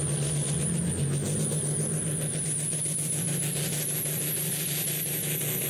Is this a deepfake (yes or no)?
no